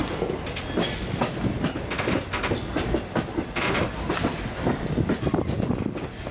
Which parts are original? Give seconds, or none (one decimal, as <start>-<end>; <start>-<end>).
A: 0.0-6.3